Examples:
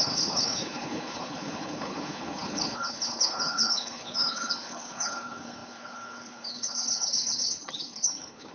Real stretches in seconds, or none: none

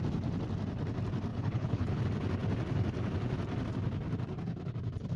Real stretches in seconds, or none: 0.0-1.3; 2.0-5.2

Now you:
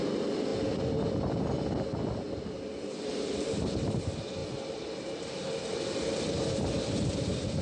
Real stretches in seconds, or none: 0.0-7.6